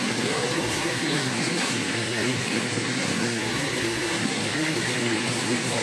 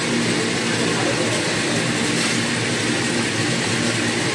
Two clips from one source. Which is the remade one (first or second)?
first